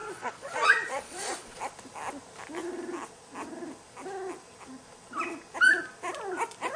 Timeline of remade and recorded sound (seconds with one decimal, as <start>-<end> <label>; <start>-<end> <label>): 0.0-1.6 remade; 1.6-6.8 recorded